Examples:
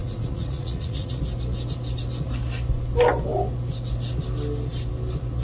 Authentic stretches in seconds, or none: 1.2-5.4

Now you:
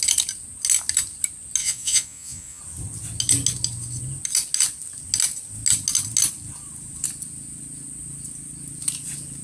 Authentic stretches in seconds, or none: 0.0-1.6; 2.6-9.4

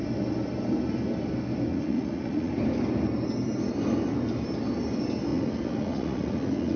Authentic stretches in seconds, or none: 0.0-1.7; 2.5-5.3

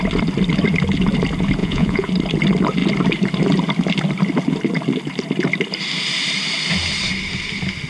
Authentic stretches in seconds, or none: 0.0-1.6; 2.1-7.9

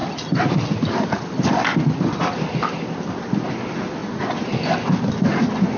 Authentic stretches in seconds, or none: 0.0-5.8

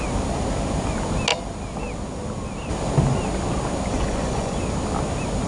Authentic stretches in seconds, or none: 0.0-3.9; 4.5-5.5

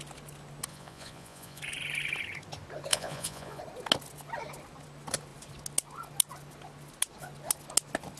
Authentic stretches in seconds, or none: 0.0-0.7; 1.6-2.9; 3.6-8.2

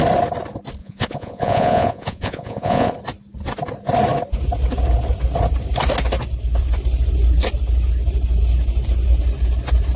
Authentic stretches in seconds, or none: 0.0-0.8; 2.9-10.0